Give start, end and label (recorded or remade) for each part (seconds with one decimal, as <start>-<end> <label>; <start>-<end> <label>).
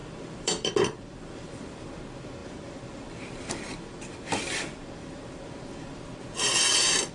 0.0-2.0 remade; 2.0-2.4 recorded; 2.4-6.0 remade; 6.0-7.1 recorded